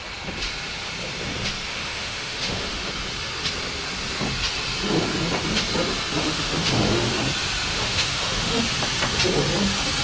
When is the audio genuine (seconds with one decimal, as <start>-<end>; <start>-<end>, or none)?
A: 0.0-1.7; 2.9-6.2; 7.1-7.7; 8.6-10.0